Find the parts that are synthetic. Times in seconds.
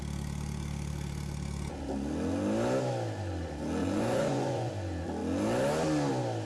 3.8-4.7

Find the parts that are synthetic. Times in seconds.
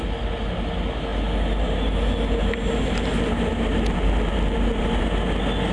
3.7-5.0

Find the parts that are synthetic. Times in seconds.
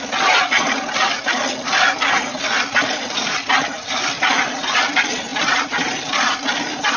none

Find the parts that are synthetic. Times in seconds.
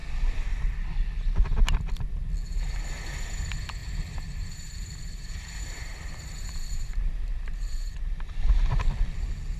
3.8-8.5